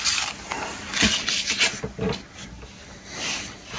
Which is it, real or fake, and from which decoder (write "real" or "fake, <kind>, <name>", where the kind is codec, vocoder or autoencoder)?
real